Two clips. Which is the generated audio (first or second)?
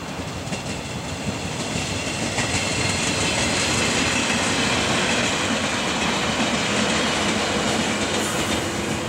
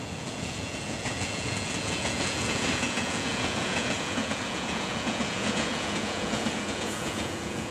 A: second